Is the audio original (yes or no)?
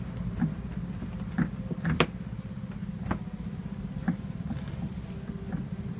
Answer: yes